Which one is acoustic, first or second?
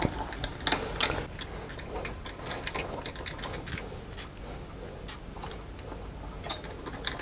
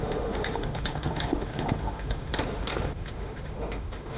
first